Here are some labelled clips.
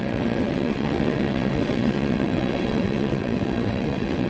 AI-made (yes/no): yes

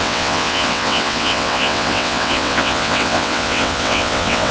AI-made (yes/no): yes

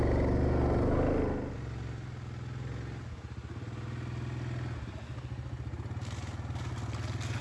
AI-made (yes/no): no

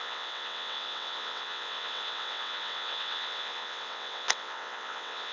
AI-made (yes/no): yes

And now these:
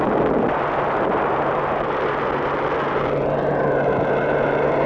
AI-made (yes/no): no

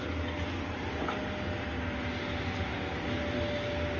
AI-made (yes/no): no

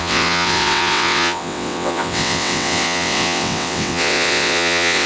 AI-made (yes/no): yes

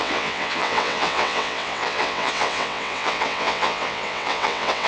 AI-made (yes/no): yes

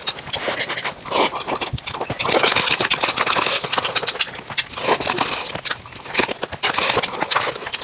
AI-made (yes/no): no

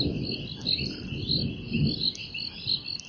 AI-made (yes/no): no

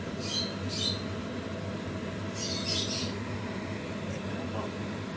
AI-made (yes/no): no